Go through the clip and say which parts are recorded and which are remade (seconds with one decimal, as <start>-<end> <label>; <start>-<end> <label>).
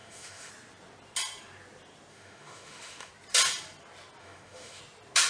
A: 0.0-0.5 remade; 0.5-2.1 recorded; 2.1-3.1 remade; 3.1-4.2 recorded; 4.2-4.8 remade; 4.8-5.3 recorded